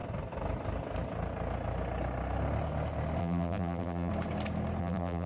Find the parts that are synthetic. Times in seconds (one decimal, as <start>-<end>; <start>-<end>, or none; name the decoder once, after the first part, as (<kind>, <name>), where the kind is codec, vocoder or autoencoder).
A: 3.2-4.1 (vocoder, BigVGAN v2); 4.8-5.3